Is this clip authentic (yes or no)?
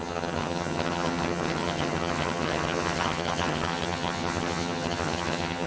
no